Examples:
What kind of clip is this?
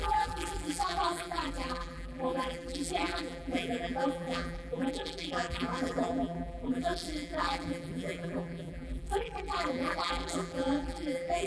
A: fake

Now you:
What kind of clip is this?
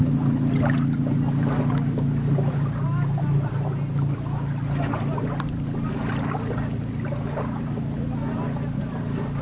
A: real